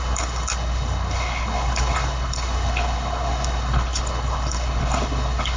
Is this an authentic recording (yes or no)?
no